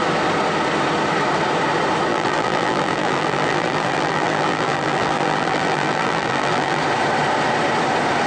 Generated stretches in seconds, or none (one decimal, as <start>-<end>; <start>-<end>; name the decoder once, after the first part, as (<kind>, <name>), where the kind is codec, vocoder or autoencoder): 2.1-6.8 (vocoder, BigVGAN v2)

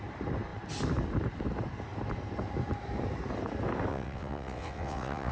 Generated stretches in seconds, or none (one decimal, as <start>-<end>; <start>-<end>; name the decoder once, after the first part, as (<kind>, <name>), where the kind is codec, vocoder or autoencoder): 3.9-5.3 (vocoder, WaveNeXt)

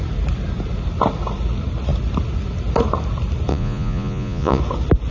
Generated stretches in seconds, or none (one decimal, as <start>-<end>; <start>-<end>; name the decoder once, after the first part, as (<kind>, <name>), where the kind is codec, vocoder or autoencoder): 3.5-4.6 (vocoder, Vocos)

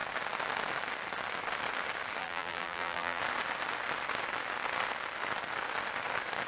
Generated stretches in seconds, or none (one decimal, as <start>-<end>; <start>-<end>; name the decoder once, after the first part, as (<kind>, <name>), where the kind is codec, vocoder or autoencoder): 2.2-3.2 (vocoder, BigVGAN v2)

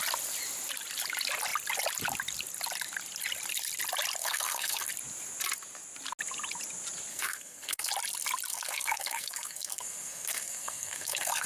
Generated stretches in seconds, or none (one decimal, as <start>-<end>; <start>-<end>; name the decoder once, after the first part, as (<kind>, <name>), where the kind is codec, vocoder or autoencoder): 4.2-4.9 (codec, SNAC); 7.1-7.9; 8.5-11.5

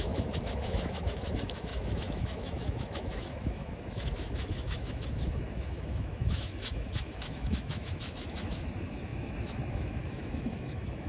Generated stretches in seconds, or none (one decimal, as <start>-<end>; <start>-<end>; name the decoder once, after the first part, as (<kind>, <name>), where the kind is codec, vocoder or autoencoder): 0.0-11.1 (autoencoder, DAC-VAE)

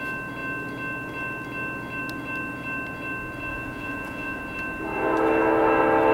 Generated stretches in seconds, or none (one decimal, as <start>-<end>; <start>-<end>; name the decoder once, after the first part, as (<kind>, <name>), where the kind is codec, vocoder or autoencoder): 3.5-4.4 (vocoder, Vocos)

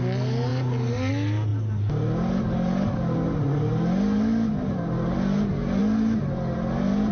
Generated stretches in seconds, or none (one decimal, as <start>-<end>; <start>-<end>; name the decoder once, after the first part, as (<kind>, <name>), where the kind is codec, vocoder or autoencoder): none